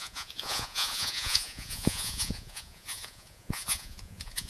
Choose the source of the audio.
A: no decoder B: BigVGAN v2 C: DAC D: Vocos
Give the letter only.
D